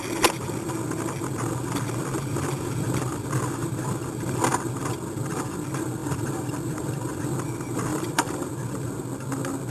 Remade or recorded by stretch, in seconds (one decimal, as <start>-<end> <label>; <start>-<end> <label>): 0.0-6.0 recorded; 6.0-7.2 remade; 7.2-7.9 recorded; 7.9-8.5 remade; 8.5-9.7 recorded